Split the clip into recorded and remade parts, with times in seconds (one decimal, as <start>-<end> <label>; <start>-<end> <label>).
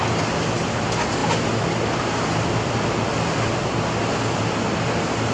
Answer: 0.0-5.3 recorded